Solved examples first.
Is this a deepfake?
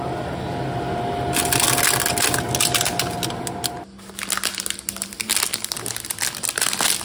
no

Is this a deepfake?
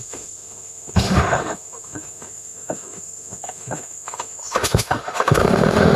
yes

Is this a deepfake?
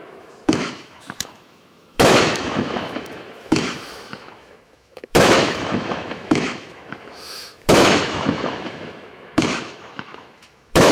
yes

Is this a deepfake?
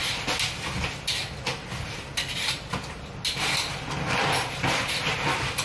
no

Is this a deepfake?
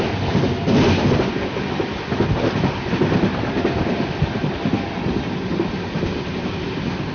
no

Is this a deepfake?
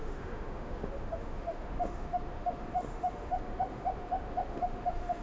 yes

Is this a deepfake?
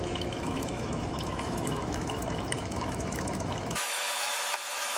yes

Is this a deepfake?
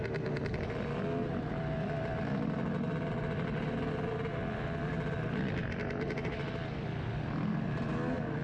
no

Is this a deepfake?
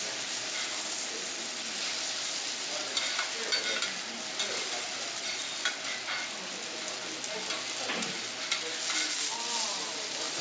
no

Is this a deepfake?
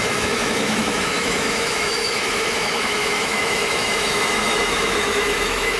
yes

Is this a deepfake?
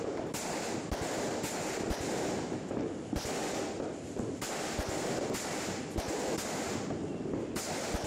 no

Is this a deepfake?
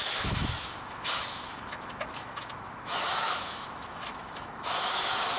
yes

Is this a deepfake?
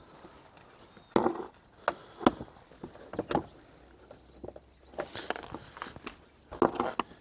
no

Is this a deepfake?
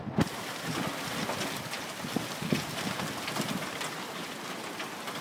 no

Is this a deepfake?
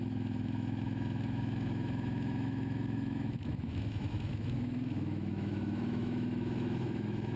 yes